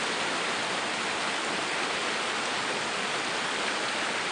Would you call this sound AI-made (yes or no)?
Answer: no